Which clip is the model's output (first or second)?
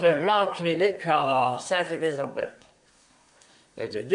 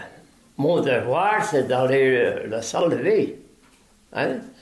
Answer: first